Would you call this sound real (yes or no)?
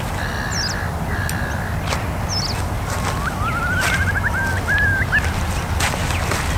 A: yes